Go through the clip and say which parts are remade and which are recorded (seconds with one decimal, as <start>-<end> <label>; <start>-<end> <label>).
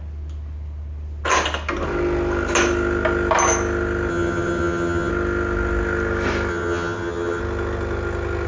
0.0-4.1 recorded; 4.1-5.1 remade; 5.1-6.5 recorded; 6.5-7.4 remade; 7.4-8.5 recorded